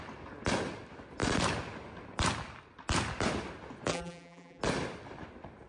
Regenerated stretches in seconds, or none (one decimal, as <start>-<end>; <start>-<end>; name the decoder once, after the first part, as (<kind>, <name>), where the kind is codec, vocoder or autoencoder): 3.9-4.6 (vocoder, BigVGAN v2)